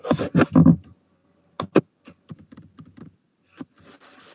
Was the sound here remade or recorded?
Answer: recorded